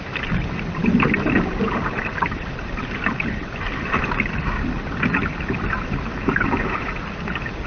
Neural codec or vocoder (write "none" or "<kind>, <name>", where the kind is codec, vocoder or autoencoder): none